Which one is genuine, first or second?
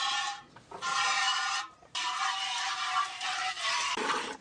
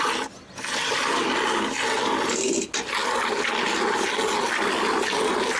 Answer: second